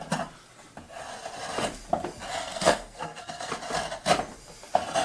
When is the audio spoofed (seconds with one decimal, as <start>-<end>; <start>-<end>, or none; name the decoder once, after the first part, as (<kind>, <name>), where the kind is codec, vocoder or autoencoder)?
2.4-3.5 (codec, SNAC)